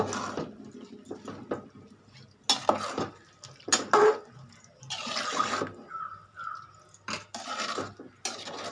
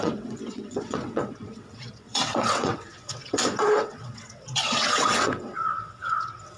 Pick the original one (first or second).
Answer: first